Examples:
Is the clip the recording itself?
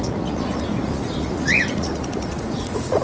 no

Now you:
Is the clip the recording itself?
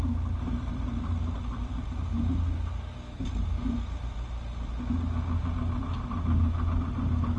yes